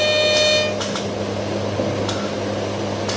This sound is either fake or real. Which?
real